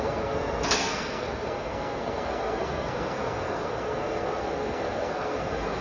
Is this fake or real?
fake